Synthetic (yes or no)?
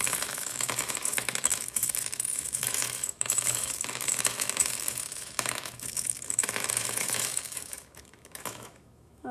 yes